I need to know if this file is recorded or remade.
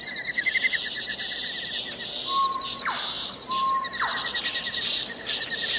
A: recorded